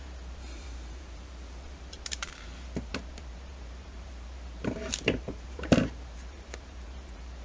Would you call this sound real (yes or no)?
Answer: no